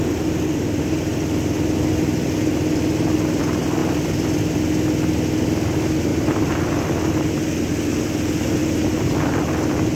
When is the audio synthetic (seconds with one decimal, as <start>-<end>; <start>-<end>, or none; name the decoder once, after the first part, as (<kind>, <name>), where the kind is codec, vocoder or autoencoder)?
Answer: 3.8-4.4 (vocoder, BigVGAN v2); 6.1-6.6